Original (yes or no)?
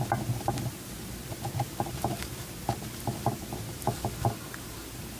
no